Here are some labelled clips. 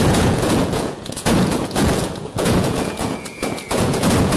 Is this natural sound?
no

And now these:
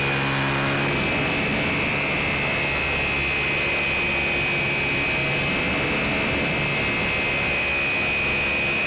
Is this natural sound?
yes